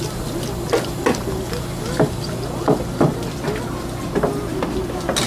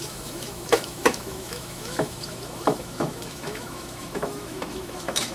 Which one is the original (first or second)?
first